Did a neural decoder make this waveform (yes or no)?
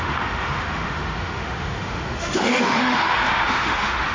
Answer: yes